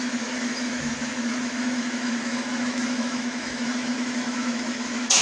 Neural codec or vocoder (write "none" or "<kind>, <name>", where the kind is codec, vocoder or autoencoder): autoencoder, DAC-VAE